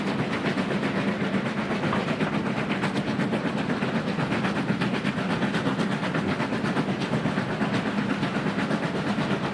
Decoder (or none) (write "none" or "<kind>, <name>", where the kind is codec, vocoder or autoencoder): none